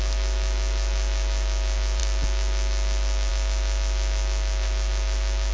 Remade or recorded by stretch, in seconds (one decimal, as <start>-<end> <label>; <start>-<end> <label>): 0.0-5.5 recorded